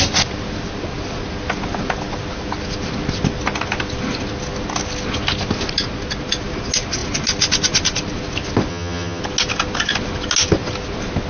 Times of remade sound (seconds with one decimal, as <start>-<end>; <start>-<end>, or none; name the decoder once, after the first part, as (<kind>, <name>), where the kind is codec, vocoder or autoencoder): 8.7-9.2 (vocoder, HiFi-GAN)